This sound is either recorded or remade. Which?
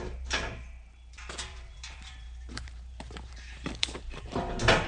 remade